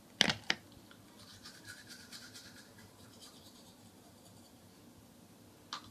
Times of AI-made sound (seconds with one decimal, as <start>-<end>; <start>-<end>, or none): 1.3-4.8